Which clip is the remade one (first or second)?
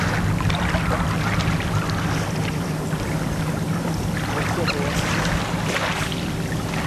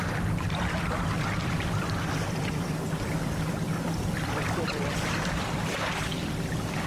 second